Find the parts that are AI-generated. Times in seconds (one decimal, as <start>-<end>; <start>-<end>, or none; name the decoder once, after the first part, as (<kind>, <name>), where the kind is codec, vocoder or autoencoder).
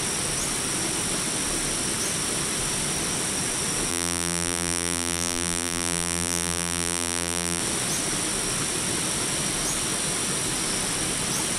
3.9-7.6 (vocoder, BigVGAN v2)